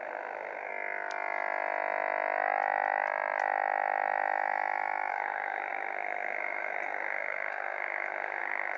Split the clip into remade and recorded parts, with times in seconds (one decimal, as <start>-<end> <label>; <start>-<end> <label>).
0.0-0.7 remade; 0.7-5.1 recorded; 5.1-8.8 remade